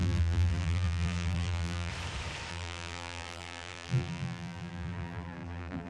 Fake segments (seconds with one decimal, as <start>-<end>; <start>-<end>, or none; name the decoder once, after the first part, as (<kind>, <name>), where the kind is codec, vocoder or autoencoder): 0.0-1.9 (vocoder, BigVGAN v2); 2.5-5.9